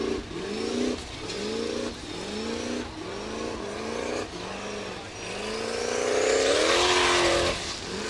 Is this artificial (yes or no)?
no